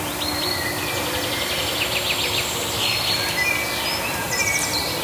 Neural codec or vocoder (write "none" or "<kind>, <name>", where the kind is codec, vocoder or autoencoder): none